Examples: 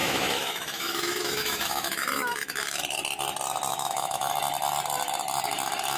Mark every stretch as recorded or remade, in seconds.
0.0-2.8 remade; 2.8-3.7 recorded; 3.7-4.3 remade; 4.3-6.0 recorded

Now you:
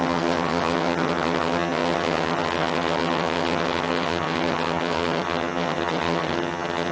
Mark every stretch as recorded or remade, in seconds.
0.0-6.9 remade

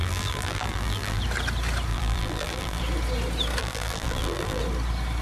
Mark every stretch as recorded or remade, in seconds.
0.0-1.2 remade; 1.2-1.9 recorded; 1.9-2.8 remade; 2.8-3.6 recorded; 3.6-4.6 remade; 4.6-5.2 recorded

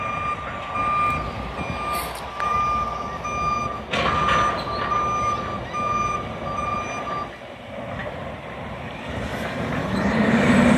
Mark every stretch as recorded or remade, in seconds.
0.0-8.0 recorded; 8.0-10.8 remade